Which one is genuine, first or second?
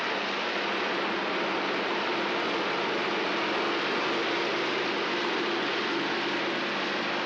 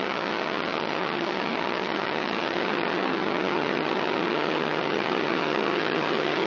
first